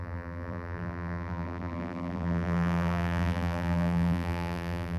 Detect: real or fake fake